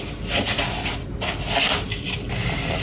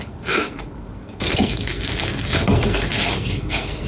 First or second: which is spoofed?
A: second